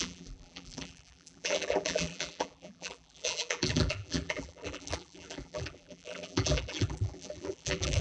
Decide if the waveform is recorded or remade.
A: remade